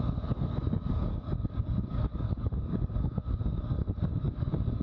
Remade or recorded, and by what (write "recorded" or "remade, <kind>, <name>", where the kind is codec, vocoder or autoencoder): remade, codec, DAC